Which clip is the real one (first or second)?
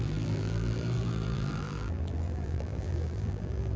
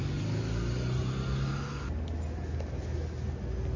second